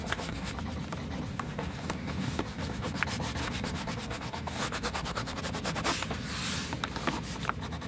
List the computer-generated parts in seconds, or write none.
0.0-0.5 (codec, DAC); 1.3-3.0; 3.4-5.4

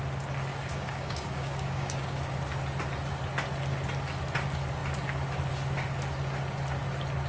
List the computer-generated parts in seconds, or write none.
0.5-2.4 (codec, DAC)

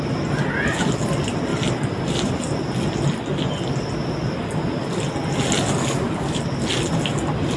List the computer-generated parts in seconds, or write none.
5.8-6.4 (codec, DAC)

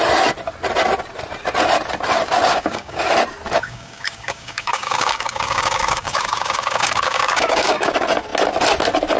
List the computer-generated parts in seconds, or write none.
2.5-3.0 (codec, DAC); 3.6-7.9

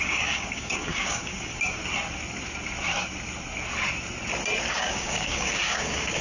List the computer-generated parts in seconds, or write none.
0.0-1.8 (codec, DAC); 4.7-6.2

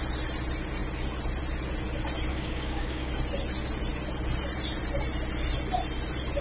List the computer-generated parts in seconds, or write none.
2.3-3.1 (codec, DAC)

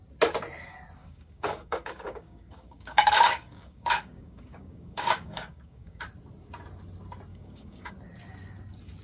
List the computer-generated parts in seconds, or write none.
1.0-6.0 (codec, DAC); 7.3-7.9